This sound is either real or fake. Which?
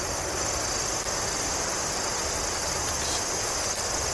real